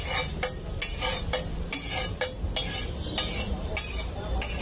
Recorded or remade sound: recorded